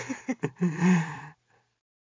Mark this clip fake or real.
fake